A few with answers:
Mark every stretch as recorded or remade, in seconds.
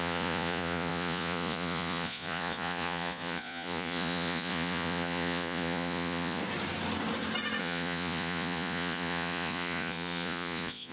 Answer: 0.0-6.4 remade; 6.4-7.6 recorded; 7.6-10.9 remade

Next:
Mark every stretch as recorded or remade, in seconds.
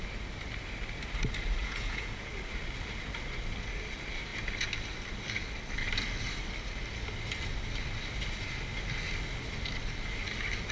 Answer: 0.0-1.6 recorded; 1.6-2.3 remade; 2.3-10.7 recorded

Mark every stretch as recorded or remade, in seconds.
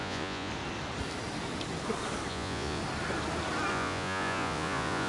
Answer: 0.0-0.5 remade; 0.5-2.3 recorded; 2.3-2.8 remade; 2.8-3.7 recorded; 3.7-5.1 remade